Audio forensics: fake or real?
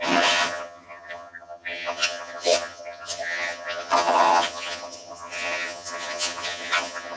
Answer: fake